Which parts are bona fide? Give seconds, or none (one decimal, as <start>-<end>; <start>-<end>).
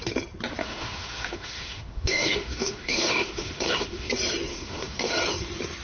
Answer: 0.0-0.6; 4.1-4.5; 5.1-5.8